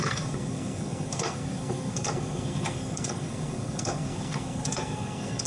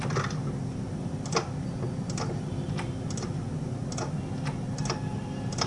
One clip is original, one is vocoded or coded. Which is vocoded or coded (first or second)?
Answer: first